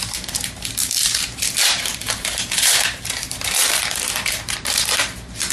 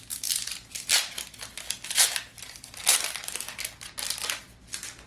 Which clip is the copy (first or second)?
first